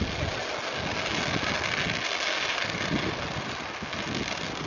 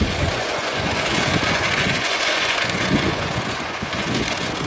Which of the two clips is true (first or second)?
first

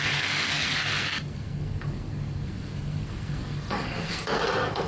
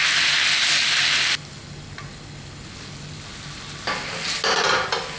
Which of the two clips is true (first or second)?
second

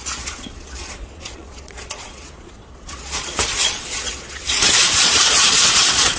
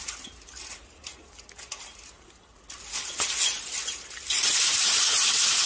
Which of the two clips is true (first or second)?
second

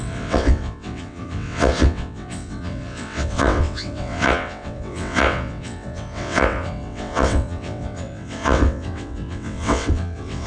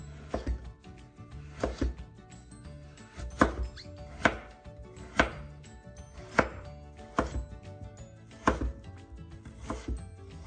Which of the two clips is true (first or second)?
second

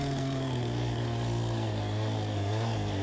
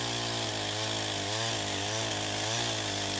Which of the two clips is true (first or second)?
second